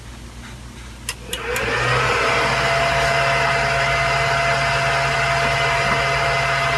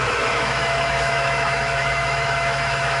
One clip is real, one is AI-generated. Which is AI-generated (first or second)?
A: second